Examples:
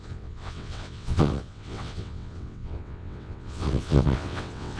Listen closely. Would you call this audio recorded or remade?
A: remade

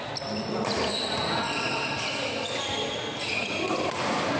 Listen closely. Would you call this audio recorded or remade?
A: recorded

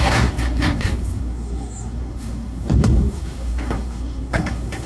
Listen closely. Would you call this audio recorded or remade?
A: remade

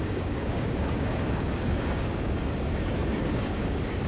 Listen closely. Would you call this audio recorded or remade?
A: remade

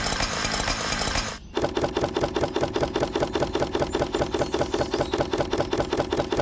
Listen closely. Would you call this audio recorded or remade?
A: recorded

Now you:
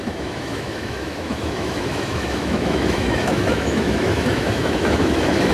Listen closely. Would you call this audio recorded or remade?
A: remade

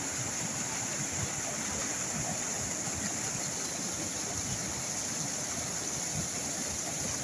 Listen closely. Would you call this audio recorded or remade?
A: recorded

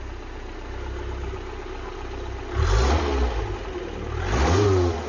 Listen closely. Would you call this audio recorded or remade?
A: recorded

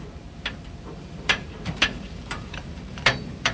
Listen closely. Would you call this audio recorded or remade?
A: remade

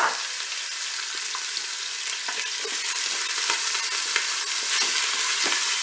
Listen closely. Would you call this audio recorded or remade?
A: recorded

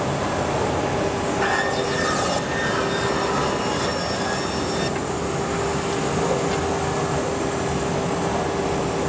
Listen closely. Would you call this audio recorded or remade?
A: recorded